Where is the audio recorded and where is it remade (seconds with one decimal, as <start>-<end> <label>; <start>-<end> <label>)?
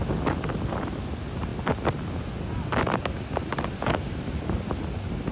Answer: 0.0-3.5 recorded; 3.5-4.7 remade; 4.7-5.3 recorded